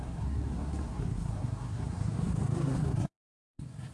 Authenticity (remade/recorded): remade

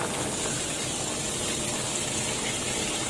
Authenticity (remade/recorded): recorded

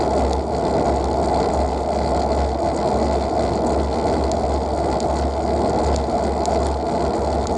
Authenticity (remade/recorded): recorded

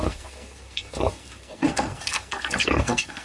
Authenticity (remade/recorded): remade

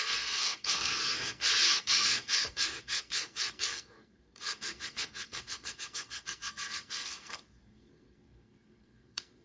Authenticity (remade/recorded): remade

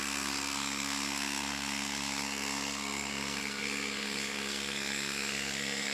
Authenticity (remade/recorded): remade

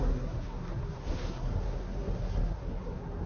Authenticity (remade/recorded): remade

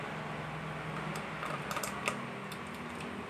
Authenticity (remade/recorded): recorded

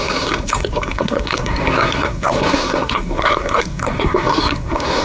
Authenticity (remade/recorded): remade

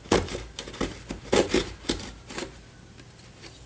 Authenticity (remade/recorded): recorded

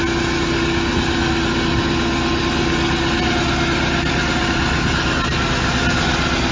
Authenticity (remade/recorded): recorded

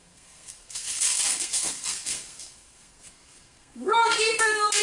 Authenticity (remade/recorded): remade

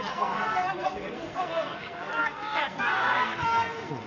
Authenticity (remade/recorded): remade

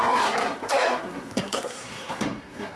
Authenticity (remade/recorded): remade